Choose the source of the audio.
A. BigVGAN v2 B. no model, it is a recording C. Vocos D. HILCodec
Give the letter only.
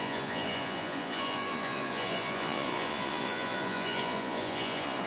C